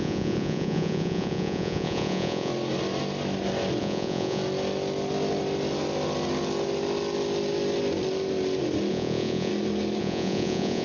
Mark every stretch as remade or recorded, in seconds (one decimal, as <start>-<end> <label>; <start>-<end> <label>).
0.0-2.5 remade; 2.5-3.8 recorded; 3.8-4.4 remade; 4.4-8.9 recorded; 8.9-9.5 remade; 9.5-10.0 recorded; 10.0-10.8 remade